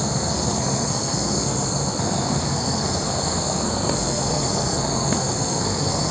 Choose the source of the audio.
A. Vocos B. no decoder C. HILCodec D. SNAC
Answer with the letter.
D